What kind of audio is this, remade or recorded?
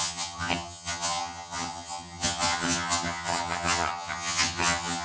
remade